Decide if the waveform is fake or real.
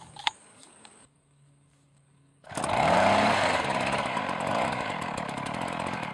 fake